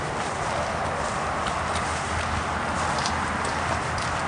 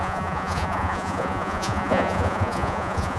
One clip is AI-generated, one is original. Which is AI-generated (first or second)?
second